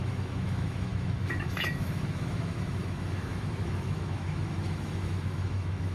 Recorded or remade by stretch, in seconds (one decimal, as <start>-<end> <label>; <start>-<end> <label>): 0.0-5.9 remade